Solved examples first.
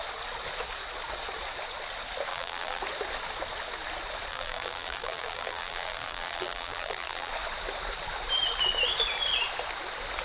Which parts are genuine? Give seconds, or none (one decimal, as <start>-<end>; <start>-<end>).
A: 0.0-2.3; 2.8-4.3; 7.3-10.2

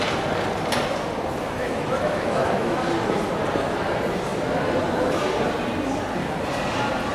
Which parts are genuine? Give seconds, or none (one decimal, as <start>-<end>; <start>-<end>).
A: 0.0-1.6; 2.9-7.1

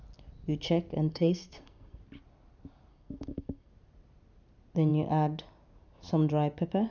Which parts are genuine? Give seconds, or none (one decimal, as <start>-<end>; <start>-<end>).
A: 0.0-1.1; 2.0-2.9; 3.7-6.9

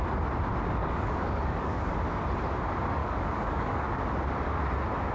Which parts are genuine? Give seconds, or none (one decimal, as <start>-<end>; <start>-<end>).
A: 0.0-0.8; 1.9-3.0; 4.1-5.1

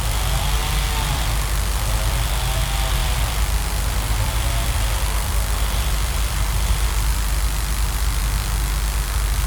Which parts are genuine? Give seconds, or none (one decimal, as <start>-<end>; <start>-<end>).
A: 0.0-0.6; 1.2-3.0; 8.2-9.5

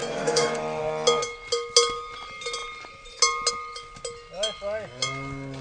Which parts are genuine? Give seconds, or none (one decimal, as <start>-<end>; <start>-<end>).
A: 0.8-5.6